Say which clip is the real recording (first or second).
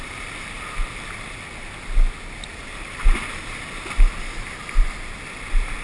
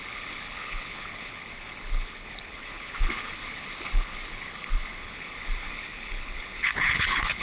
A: first